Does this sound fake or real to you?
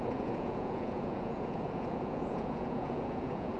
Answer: fake